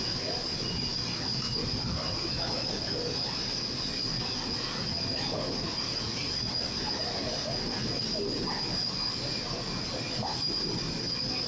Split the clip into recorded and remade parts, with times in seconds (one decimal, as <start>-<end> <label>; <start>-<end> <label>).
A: 0.0-11.5 recorded